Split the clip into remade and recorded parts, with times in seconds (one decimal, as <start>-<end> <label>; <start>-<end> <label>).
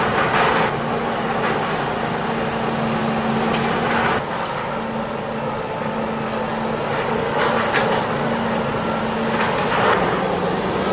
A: 0.0-10.9 recorded